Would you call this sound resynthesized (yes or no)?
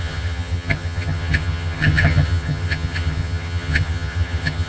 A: yes